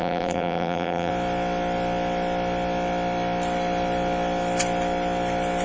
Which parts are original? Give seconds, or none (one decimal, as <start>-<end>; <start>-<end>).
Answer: 1.1-5.6